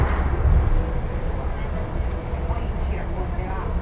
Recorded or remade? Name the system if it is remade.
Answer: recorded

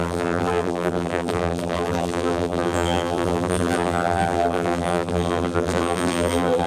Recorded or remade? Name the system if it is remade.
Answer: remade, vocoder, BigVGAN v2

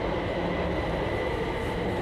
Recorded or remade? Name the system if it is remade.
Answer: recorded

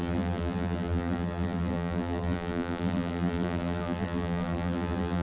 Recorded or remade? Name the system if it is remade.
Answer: remade, vocoder, BigVGAN v2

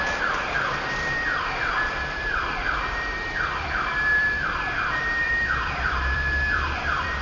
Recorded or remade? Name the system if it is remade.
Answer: remade, vocoder, BigVGAN v2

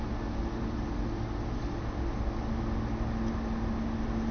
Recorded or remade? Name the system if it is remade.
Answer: recorded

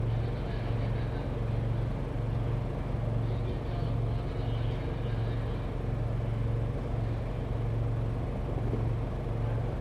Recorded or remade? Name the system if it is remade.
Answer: recorded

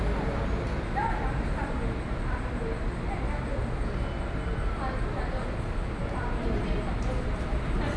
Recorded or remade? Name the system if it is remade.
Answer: recorded